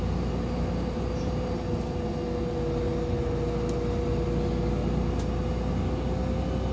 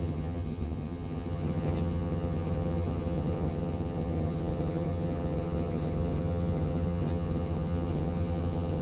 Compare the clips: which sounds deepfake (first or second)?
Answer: second